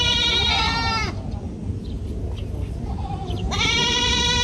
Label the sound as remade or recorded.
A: recorded